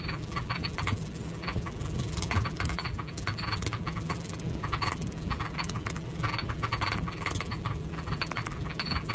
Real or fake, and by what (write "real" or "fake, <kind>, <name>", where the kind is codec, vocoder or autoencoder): fake, vocoder, BigVGAN v2